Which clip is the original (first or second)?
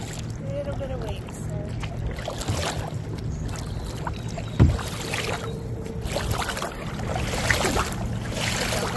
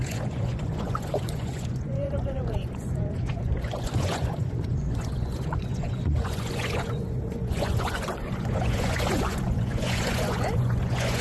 first